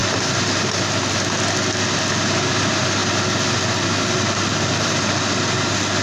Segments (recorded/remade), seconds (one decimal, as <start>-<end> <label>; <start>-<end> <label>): 0.0-6.0 recorded